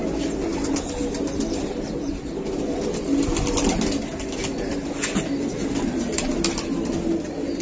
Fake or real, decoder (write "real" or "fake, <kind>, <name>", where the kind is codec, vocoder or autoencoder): real